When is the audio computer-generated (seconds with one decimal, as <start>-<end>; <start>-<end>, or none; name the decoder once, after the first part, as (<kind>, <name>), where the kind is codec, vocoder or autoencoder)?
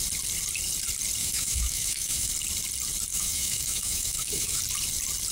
1.2-2.3 (autoencoder, DAC-VAE); 3.1-4.6